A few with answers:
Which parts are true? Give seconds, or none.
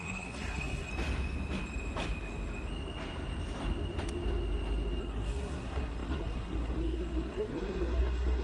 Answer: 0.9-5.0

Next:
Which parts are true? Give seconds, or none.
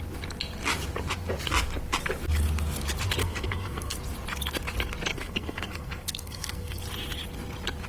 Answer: 0.0-3.2; 4.0-5.1; 6.8-7.9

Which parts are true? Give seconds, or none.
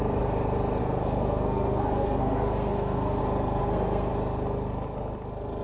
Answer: 0.0-0.8; 3.2-3.6; 4.1-5.6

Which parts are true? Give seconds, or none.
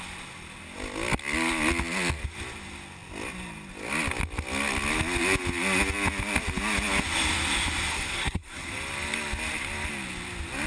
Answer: 0.0-7.9; 8.7-10.7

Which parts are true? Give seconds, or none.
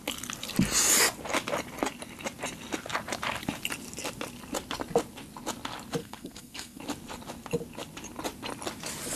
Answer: 0.0-6.0; 6.8-9.2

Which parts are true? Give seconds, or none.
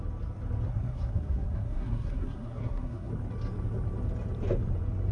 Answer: 0.0-0.7; 3.1-5.1